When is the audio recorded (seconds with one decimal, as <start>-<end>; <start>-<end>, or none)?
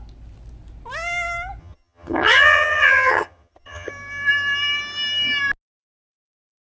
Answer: 0.0-1.6; 3.9-6.7